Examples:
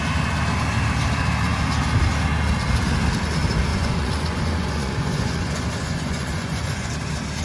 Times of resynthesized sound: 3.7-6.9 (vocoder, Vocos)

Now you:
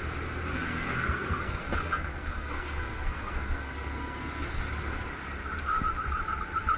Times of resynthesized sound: 0.5-4.6 (codec, SNAC)

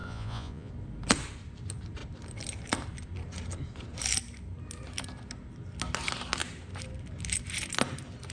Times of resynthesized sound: 0.0-0.7 (vocoder, Vocos)

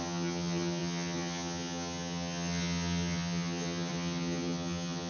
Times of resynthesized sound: 0.0-5.1 (vocoder, HiFi-GAN)